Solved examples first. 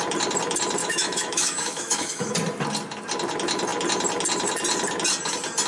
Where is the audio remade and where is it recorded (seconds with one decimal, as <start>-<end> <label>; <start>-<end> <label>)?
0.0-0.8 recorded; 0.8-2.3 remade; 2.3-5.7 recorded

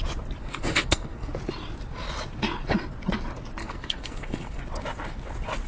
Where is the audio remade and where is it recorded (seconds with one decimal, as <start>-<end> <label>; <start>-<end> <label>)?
0.0-0.4 recorded; 0.4-1.3 remade; 1.3-3.6 recorded; 3.6-4.6 remade; 4.6-5.7 recorded

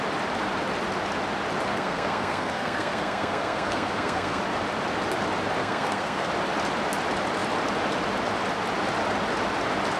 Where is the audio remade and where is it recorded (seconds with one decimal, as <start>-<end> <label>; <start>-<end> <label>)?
0.0-1.7 recorded; 1.7-4.4 remade; 4.4-5.6 recorded; 5.6-6.3 remade; 6.3-10.0 recorded